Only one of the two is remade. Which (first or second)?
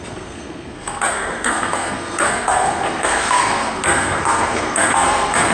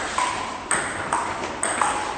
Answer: first